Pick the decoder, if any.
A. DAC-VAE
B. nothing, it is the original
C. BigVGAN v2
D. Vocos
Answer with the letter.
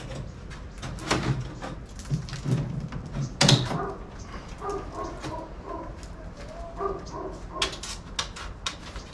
B